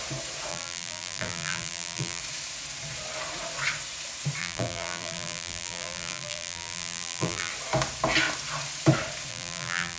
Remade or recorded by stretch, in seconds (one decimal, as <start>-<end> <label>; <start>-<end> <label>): 0.0-0.5 recorded; 0.5-2.2 remade; 2.2-4.4 recorded; 4.4-7.5 remade; 7.5-9.3 recorded; 9.3-10.0 remade